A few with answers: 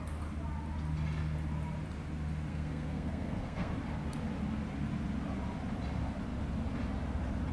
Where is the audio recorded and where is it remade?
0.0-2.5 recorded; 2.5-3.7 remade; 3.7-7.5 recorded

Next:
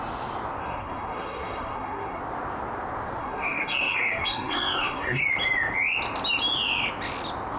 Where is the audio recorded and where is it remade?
0.0-0.6 recorded; 0.6-2.2 remade; 2.2-3.2 recorded; 3.2-5.2 remade; 5.2-7.6 recorded

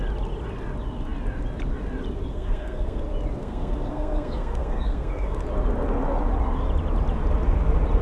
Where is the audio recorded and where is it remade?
0.0-2.3 recorded; 2.3-3.0 remade; 3.0-3.4 recorded; 3.4-5.4 remade; 5.4-8.0 recorded

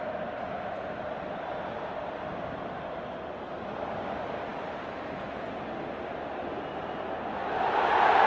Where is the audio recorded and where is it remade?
0.0-8.3 recorded

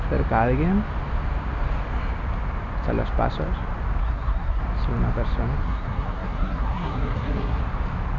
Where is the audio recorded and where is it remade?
0.0-4.0 recorded; 4.0-4.6 remade; 4.6-5.6 recorded; 5.6-7.6 remade; 7.6-8.2 recorded

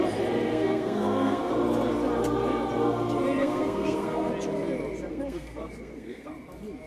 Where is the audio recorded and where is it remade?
0.0-0.5 recorded; 0.5-1.5 remade; 1.5-3.4 recorded; 3.4-4.3 remade; 4.3-5.1 recorded; 5.1-6.3 remade; 6.3-6.9 recorded

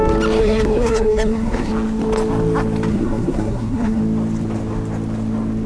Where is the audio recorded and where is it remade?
0.0-0.4 recorded; 0.4-1.7 remade; 1.7-2.9 recorded; 2.9-4.0 remade; 4.0-5.7 recorded

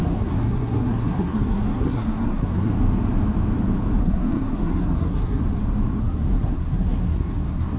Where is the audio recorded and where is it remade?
0.0-2.7 remade; 2.7-4.0 recorded; 4.0-5.4 remade; 5.4-6.0 recorded; 6.0-7.8 remade